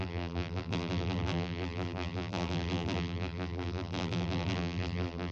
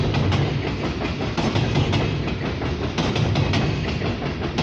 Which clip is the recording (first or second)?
second